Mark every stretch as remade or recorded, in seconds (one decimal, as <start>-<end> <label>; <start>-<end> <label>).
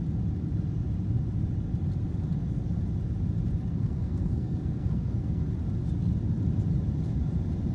0.0-3.7 recorded; 3.7-5.4 remade; 5.4-7.7 recorded